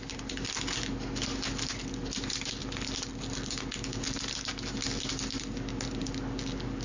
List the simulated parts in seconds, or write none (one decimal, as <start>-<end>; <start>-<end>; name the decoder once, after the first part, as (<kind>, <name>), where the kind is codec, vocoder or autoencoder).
none